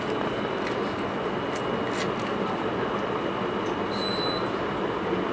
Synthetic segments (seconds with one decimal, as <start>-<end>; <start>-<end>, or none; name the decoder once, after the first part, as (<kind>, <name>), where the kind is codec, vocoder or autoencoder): none